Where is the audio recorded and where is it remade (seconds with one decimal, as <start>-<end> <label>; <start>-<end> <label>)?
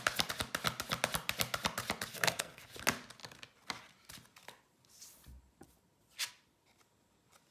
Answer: 0.0-2.1 recorded; 2.1-2.7 remade; 2.7-7.5 recorded